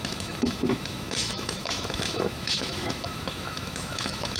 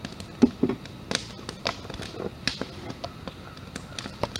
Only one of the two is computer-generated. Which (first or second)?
first